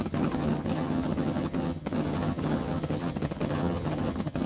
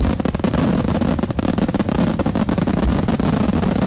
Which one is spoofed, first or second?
first